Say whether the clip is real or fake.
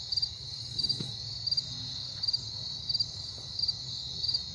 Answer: real